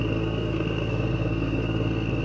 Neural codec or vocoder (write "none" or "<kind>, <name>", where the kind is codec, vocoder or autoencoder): codec, SNAC